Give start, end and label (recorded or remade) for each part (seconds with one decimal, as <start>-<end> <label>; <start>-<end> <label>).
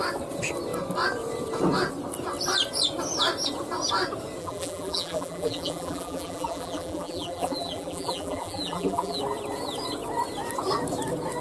0.0-4.4 recorded; 4.4-9.2 remade; 9.2-11.4 recorded